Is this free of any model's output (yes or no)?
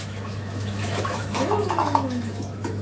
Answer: no